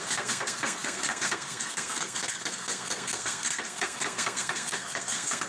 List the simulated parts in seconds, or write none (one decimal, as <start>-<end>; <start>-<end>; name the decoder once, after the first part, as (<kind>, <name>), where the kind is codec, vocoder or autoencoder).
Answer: 0.0-5.5 (codec, SNAC)